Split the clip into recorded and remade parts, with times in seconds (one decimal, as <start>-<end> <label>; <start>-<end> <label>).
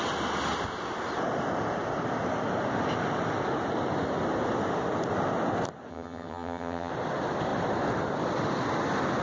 0.0-5.9 recorded; 5.9-6.9 remade; 6.9-9.2 recorded